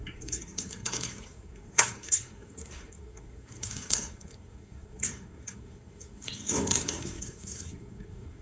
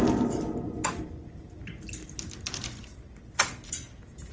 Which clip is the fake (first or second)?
first